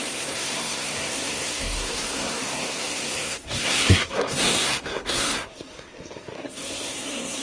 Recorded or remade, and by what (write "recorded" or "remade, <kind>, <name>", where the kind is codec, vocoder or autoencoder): remade, codec, SNAC